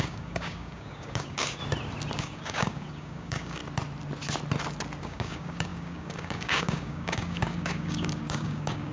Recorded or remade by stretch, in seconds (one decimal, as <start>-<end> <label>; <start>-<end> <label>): 0.0-1.6 remade; 1.6-2.2 recorded; 2.2-3.6 remade; 3.6-5.0 recorded; 5.0-8.9 remade